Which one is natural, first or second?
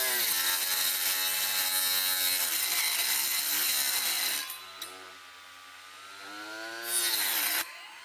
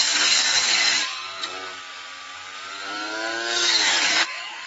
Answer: first